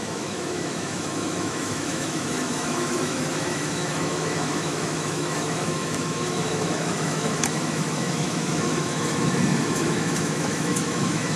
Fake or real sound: fake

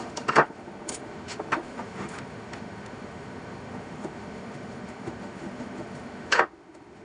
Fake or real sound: fake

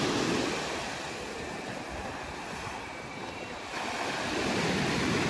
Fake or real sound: real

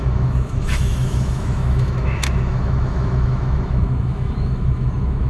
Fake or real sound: fake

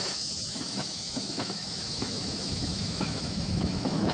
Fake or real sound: fake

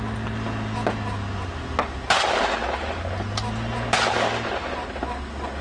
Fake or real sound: real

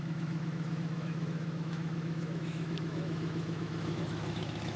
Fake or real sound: fake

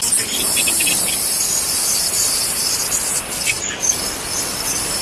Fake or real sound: real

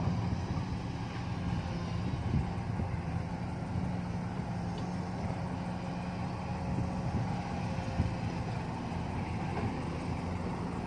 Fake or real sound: real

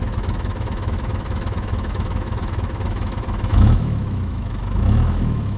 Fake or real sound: fake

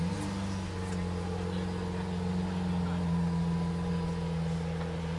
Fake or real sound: real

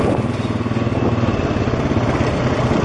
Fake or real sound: real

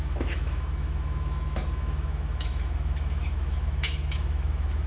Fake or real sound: fake